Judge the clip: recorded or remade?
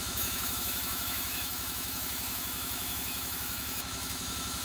remade